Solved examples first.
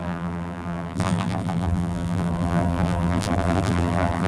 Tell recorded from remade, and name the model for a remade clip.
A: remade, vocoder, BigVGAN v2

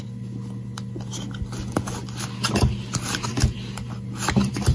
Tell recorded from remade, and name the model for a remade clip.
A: recorded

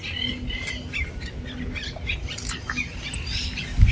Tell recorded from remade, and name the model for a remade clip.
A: recorded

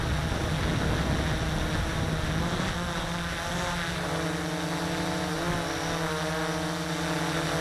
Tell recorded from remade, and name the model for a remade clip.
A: recorded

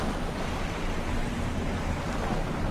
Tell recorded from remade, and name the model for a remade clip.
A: recorded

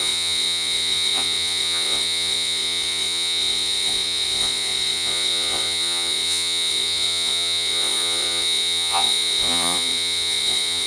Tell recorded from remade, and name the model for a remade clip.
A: remade, vocoder, Vocos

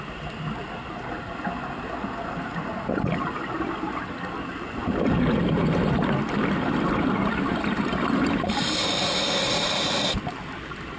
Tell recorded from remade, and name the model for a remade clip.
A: recorded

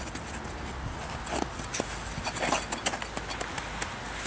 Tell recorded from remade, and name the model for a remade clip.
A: recorded